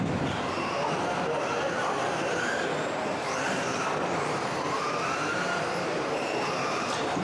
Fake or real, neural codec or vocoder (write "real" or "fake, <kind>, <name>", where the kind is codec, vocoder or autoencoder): fake, vocoder, BigVGAN v2